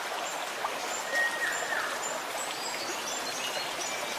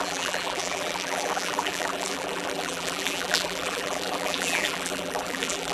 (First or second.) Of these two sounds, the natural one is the first